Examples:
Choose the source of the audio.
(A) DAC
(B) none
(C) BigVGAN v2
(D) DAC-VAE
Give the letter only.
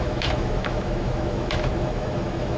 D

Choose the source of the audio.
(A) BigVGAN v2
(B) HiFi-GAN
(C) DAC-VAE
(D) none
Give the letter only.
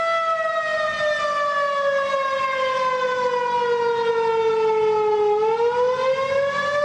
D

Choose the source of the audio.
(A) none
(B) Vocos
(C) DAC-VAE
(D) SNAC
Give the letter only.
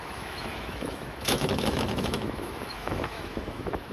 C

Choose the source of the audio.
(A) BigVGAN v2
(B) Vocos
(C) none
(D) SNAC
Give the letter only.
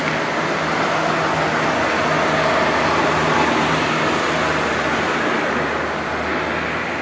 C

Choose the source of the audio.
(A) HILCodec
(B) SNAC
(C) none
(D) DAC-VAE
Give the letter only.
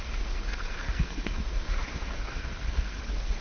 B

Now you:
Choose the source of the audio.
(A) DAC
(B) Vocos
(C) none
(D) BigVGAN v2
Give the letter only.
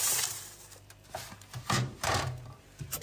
D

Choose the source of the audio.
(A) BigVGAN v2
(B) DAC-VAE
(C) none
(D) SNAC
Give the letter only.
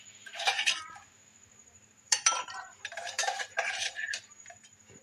A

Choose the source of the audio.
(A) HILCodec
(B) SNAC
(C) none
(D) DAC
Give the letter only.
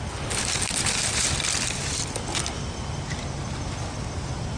C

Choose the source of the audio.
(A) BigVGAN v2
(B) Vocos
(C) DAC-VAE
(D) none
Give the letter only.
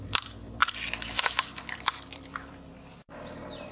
A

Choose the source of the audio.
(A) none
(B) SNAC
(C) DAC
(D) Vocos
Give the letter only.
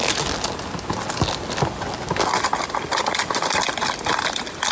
A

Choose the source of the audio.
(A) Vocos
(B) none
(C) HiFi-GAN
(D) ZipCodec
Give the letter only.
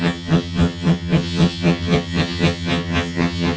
C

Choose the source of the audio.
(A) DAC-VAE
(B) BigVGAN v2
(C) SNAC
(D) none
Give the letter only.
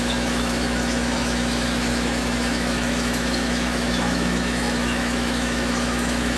A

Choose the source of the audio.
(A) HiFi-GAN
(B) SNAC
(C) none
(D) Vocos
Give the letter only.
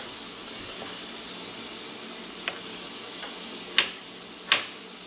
C